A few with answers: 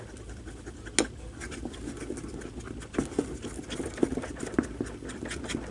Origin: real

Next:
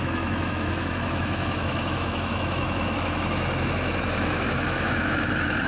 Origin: fake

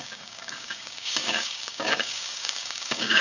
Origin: fake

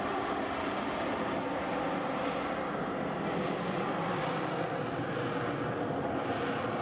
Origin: real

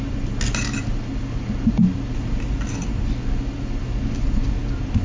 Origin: real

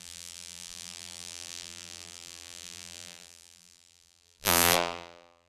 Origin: fake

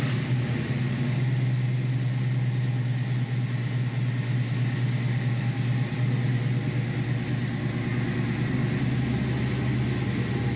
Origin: real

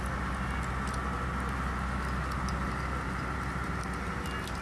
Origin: real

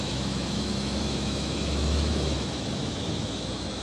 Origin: fake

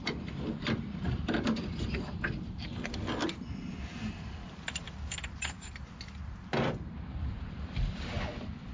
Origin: real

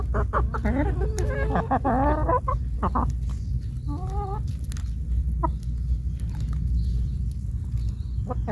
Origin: real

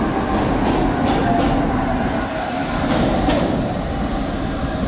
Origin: real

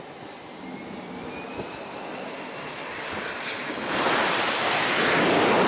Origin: real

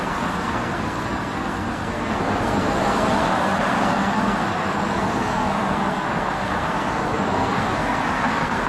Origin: fake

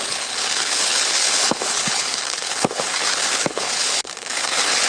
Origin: fake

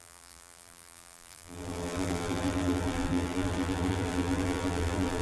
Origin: fake